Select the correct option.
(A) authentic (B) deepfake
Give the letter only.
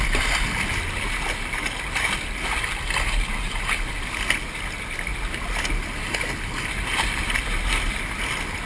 A